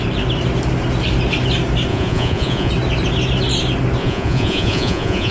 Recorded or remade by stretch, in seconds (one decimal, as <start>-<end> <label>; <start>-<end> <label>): 0.0-1.9 recorded; 1.9-2.7 remade; 2.7-4.0 recorded; 4.0-5.3 remade

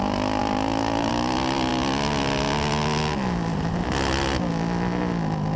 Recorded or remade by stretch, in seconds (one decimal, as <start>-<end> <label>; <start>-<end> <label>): 0.0-5.6 recorded

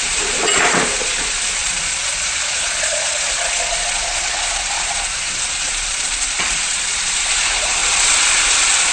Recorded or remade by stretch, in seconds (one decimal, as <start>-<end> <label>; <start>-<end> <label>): 0.0-8.9 remade

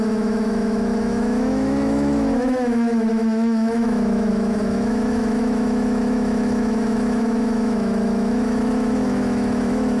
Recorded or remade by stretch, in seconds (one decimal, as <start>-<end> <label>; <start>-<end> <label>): 0.0-10.0 remade

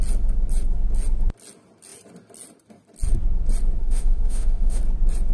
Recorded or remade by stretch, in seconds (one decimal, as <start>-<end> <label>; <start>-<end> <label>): 0.0-3.8 recorded; 3.8-4.8 remade; 4.8-5.3 recorded

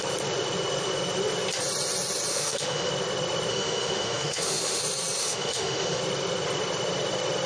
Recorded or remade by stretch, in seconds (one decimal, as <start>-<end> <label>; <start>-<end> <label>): 0.0-2.3 recorded; 2.3-2.9 remade; 2.9-3.5 recorded; 3.5-4.8 remade; 4.8-5.2 recorded; 5.2-6.0 remade; 6.0-7.5 recorded

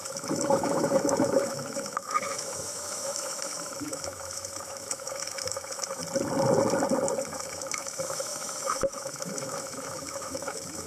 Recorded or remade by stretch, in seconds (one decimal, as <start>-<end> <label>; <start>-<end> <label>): 0.0-6.0 remade; 6.0-7.2 recorded; 7.2-10.9 remade

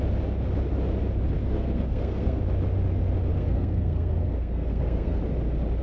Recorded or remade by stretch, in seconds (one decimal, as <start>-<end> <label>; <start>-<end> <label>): 0.0-1.4 recorded; 1.4-2.4 remade; 2.4-3.3 recorded; 3.3-5.2 remade; 5.2-5.8 recorded